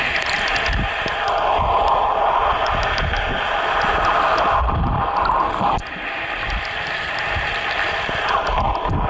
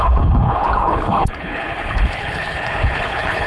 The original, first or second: first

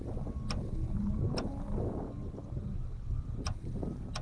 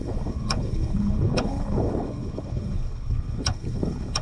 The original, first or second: first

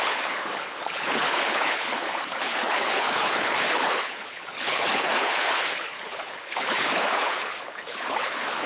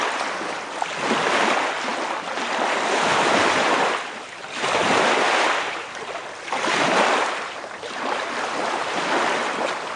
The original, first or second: second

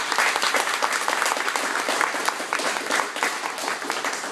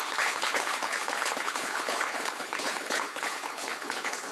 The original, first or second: first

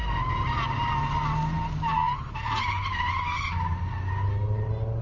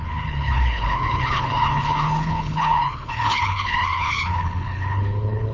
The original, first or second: first